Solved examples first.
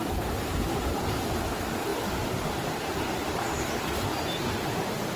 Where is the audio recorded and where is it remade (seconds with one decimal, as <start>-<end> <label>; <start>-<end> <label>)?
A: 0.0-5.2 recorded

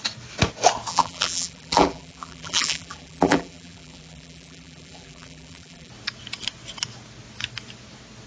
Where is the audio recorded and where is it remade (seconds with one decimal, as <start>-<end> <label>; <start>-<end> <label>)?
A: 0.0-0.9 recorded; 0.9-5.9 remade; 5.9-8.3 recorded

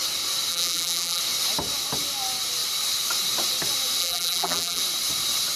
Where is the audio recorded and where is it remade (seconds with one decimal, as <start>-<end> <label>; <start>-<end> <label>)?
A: 0.0-0.5 recorded; 0.5-1.2 remade; 1.2-4.0 recorded; 4.0-4.8 remade; 4.8-5.6 recorded

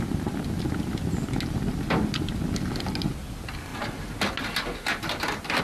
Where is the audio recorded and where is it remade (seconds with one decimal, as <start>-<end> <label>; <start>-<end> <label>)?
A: 0.0-5.6 recorded

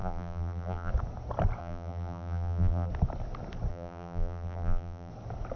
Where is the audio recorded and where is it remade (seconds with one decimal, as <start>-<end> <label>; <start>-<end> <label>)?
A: 0.0-0.9 remade; 0.9-1.6 recorded; 1.6-2.9 remade; 2.9-3.7 recorded; 3.7-5.1 remade; 5.1-5.6 recorded

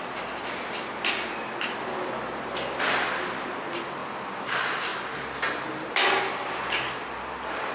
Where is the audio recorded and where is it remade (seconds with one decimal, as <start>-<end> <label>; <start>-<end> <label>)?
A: 0.0-7.7 recorded